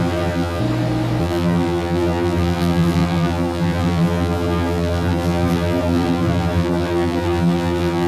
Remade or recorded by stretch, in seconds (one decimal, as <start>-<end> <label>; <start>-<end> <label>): 0.0-0.6 remade; 0.6-1.2 recorded; 1.2-8.1 remade